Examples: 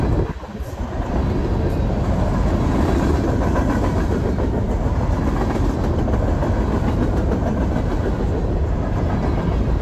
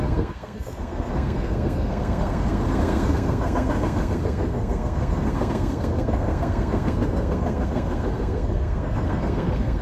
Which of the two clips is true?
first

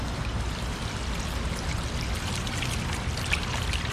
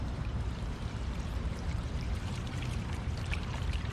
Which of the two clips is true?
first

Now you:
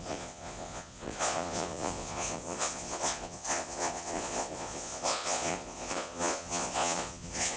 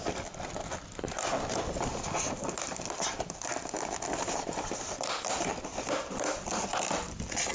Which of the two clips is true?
second